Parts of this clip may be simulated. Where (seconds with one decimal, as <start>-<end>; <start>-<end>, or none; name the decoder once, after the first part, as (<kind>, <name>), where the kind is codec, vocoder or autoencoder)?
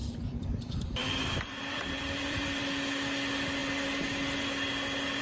0.0-2.6 (vocoder, BigVGAN v2)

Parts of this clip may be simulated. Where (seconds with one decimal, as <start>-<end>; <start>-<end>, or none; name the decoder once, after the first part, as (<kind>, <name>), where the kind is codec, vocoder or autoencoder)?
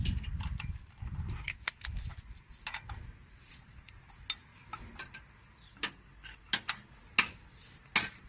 4.5-5.8 (vocoder, BigVGAN v2)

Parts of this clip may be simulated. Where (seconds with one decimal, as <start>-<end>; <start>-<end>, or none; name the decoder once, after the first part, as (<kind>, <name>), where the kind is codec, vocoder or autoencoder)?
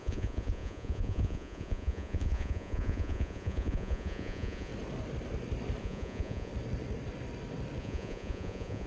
0.0-4.7 (vocoder, Vocos); 5.8-6.5; 7.8-8.9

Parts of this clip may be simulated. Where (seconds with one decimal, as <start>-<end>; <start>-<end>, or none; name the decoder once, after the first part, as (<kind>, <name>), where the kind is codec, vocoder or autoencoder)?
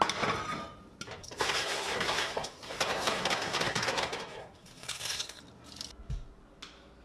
1.2-5.4 (codec, SNAC)